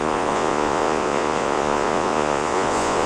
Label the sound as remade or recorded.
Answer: remade